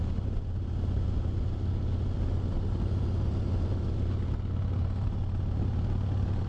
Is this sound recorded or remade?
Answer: recorded